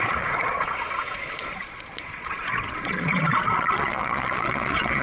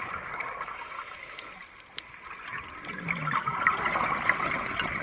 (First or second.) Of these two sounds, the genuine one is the second